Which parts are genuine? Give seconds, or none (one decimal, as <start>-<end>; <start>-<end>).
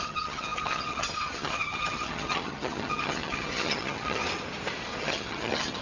4.2-5.0